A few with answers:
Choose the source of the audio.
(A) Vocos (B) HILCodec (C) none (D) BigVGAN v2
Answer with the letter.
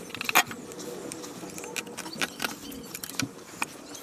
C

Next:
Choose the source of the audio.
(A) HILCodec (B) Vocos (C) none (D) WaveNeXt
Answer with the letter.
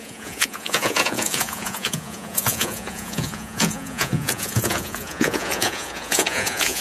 B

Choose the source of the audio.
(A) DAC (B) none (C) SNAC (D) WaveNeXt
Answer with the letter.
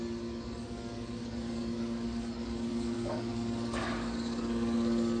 A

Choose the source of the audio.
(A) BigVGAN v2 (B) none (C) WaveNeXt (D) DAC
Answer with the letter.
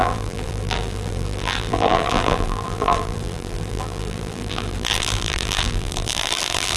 A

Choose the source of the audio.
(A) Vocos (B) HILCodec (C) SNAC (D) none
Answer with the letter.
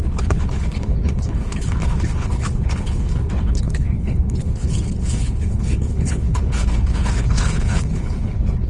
B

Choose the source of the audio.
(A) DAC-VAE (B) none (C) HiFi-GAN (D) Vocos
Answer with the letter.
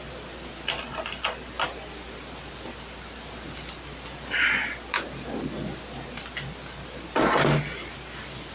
B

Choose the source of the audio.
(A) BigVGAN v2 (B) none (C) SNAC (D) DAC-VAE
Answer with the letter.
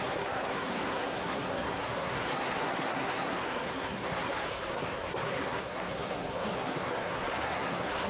C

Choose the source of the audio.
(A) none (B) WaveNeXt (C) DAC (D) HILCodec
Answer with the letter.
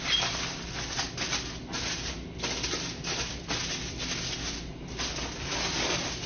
A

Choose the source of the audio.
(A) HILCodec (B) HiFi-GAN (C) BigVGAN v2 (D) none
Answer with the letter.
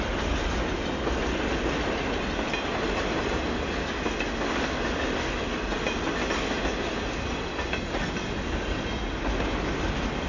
D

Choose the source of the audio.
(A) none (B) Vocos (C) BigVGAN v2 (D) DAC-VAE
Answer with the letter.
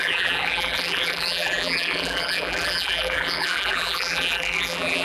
C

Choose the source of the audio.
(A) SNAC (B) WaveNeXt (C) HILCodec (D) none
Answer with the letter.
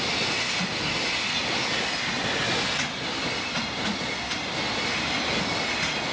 D